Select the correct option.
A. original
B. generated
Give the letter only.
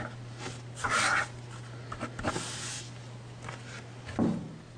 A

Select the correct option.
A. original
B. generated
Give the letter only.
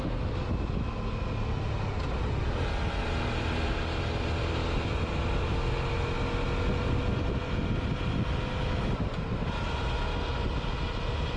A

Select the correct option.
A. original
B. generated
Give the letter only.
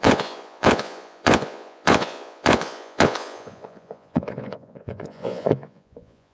B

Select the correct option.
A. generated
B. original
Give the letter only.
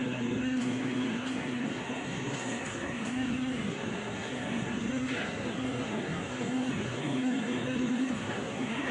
A